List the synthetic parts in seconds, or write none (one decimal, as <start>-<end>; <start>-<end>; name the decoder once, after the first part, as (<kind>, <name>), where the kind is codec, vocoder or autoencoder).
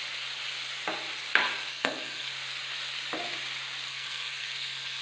1.7-2.3 (codec, SNAC); 3.9-5.0